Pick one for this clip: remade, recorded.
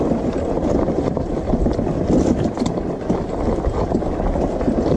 recorded